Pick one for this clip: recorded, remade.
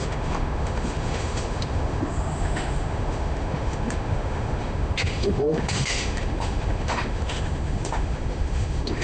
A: remade